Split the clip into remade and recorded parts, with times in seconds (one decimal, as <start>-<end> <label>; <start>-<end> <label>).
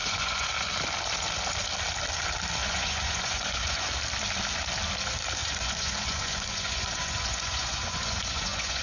0.0-0.5 remade; 0.5-2.6 recorded; 2.6-3.9 remade; 3.9-5.4 recorded; 5.4-8.8 remade